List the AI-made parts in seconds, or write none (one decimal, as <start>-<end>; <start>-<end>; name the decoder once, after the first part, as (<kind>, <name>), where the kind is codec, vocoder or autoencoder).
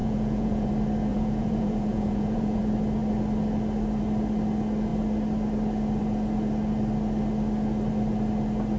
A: 0.0-0.7 (vocoder, Vocos); 1.1-2.6